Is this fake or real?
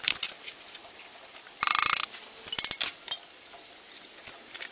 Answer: real